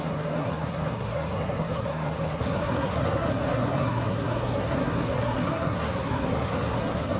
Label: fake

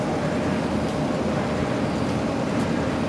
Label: real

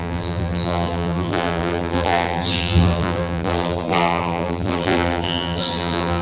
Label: fake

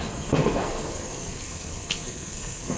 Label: fake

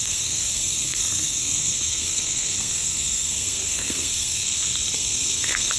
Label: fake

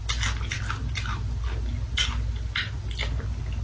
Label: real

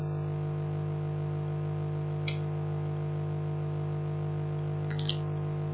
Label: real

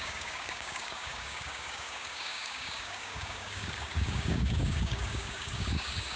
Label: fake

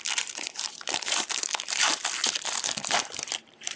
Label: fake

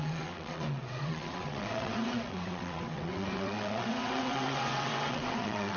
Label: fake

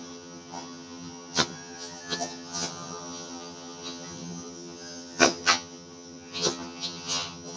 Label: fake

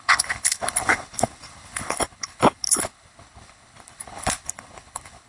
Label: fake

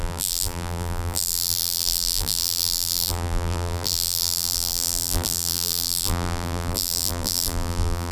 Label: fake